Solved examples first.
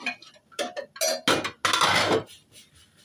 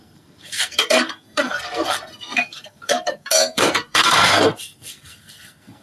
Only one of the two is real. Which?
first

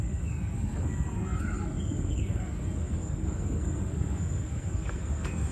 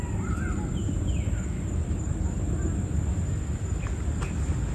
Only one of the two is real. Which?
second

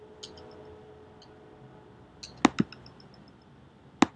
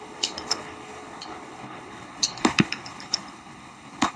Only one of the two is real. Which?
first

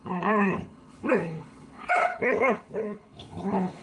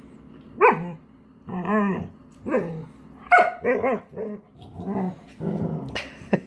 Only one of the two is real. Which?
second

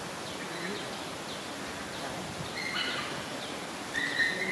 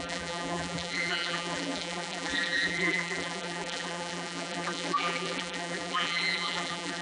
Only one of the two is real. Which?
first